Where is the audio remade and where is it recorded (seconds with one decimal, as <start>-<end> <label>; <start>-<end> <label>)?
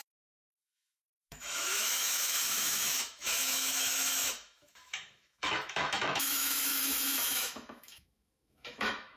0.0-9.2 remade